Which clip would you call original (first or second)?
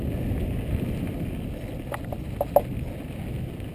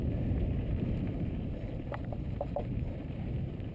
first